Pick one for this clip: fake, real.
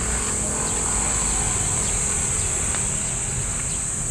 real